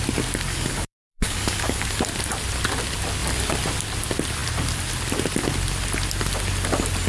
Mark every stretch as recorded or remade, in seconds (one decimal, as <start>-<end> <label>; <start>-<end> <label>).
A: 0.0-0.5 recorded; 0.5-2.0 remade; 2.0-7.1 recorded